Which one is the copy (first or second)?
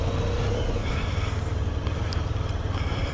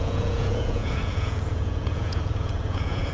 second